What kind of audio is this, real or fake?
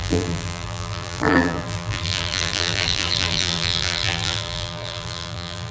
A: fake